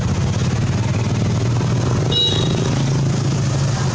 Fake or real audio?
real